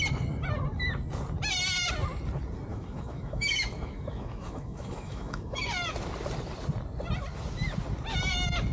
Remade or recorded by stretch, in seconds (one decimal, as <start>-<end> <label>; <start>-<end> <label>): 0.0-2.7 recorded; 2.7-5.6 remade; 5.6-8.7 recorded